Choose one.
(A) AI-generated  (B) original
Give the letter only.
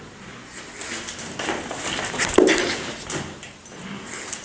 B